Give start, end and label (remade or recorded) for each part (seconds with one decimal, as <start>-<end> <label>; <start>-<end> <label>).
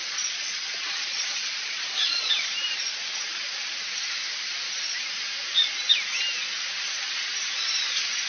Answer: 0.0-2.5 remade; 2.5-8.3 recorded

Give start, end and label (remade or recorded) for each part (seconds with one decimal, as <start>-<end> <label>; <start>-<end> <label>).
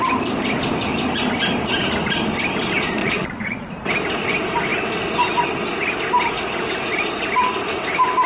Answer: 0.0-3.0 recorded; 3.0-3.7 remade; 3.7-8.3 recorded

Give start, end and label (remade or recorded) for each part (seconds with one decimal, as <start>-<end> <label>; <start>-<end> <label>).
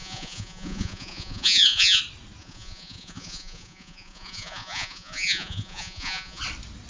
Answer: 0.0-2.0 remade; 2.0-2.4 recorded; 2.4-6.4 remade; 6.4-6.9 recorded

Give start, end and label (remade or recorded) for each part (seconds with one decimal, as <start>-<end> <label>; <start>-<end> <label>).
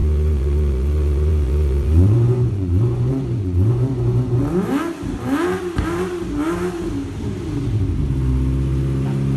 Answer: 0.0-4.4 remade; 4.4-9.4 recorded